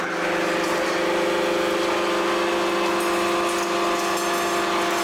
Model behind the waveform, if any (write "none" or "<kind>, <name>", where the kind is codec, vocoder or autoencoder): none